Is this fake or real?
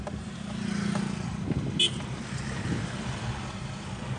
real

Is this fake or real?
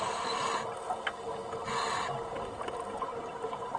real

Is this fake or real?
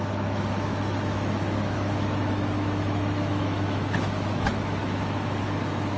fake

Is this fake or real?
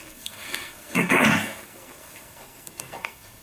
fake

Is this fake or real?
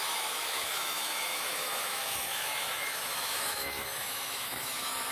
fake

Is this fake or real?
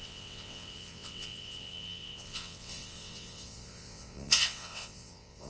fake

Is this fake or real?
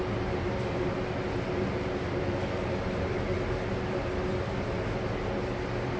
real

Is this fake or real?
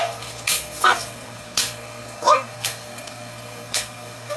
fake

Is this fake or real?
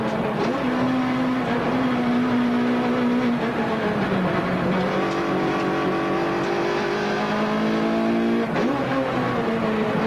real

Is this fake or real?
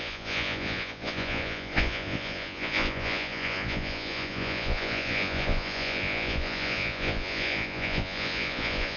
fake